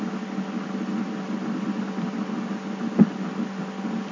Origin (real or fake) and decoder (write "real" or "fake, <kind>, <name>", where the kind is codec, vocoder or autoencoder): real